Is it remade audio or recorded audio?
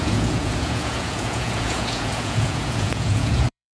remade